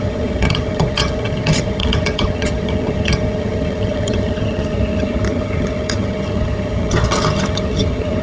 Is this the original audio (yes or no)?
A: no